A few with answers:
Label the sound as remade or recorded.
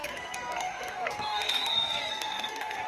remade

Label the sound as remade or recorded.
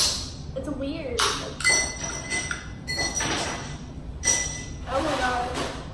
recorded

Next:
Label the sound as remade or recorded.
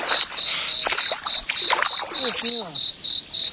recorded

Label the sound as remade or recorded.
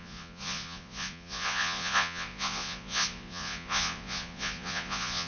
remade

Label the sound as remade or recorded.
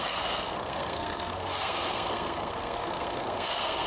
remade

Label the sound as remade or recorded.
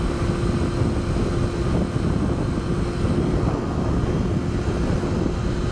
recorded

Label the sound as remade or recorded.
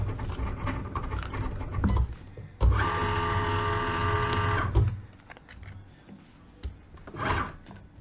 recorded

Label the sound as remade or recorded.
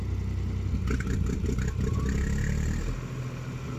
recorded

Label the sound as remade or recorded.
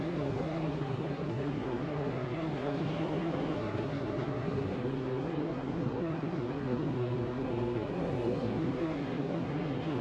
remade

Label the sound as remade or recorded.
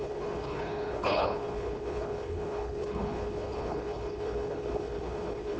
remade